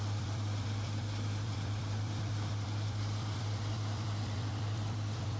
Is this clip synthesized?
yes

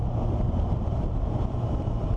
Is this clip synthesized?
yes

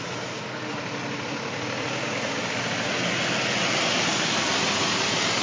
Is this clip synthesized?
no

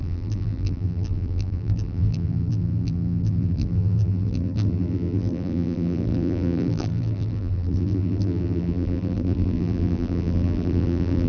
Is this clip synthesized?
yes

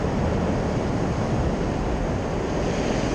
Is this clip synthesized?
no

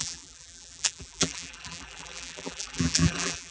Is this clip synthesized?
yes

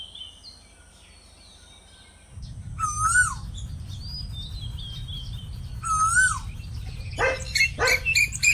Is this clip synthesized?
no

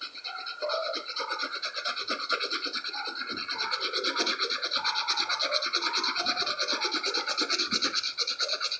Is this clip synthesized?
yes